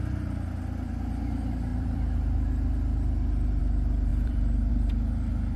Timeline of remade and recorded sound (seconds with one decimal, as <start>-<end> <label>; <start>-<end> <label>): 0.0-1.7 recorded; 1.7-3.6 remade; 3.6-4.1 recorded; 4.1-4.7 remade; 4.7-5.6 recorded